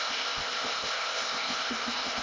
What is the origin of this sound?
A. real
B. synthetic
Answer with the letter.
B